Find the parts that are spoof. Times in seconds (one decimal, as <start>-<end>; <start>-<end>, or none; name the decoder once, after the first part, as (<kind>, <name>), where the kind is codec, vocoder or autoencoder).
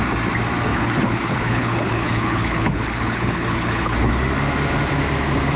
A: 0.7-4.1 (codec, HILCodec)